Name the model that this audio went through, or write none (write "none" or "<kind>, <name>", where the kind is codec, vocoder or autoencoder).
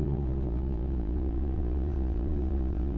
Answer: vocoder, Vocos